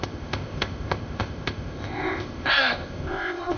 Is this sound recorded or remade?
remade